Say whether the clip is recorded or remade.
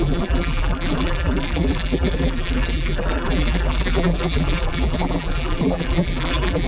remade